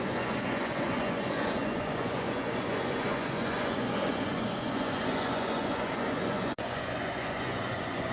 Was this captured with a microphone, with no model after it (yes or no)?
no